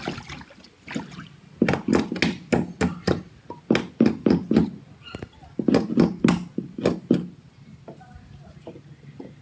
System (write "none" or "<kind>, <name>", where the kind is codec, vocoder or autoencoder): none